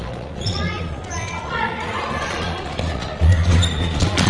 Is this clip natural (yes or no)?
no